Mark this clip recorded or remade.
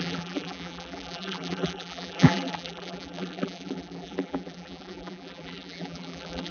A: remade